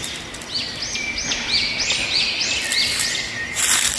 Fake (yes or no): no